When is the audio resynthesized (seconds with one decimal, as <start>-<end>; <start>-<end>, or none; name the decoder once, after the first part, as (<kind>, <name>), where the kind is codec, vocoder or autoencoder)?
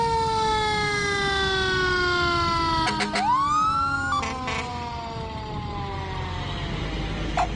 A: none